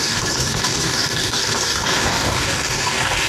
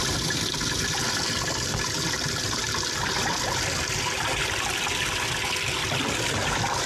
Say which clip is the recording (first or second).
second